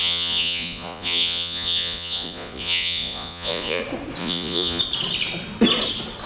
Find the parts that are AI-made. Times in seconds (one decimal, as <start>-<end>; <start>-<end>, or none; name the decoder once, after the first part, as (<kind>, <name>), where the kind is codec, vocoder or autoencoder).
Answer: 0.0-3.8 (vocoder, Vocos); 4.2-4.8